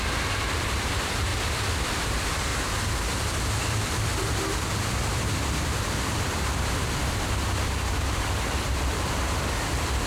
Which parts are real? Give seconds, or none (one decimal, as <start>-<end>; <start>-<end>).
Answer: 1.3-1.8; 2.5-3.6